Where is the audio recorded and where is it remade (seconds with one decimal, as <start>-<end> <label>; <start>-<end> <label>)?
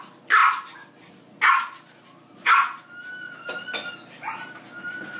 0.0-5.2 recorded